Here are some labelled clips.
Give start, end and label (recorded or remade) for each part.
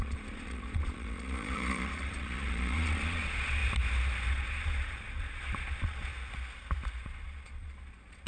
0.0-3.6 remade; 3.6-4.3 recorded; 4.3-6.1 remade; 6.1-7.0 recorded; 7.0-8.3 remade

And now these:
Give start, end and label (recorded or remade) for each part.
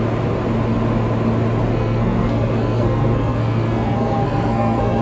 0.0-1.7 recorded; 1.7-5.0 remade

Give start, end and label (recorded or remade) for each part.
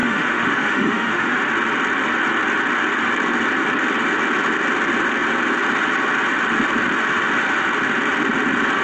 0.0-1.4 remade; 1.4-8.8 recorded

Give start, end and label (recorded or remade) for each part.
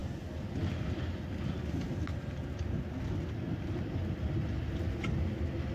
0.0-5.7 recorded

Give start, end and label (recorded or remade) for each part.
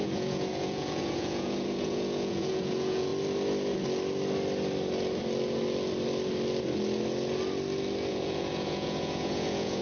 0.0-3.1 remade; 3.1-8.1 recorded; 8.1-9.8 remade